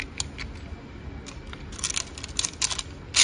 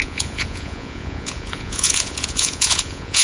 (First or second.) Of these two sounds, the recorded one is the first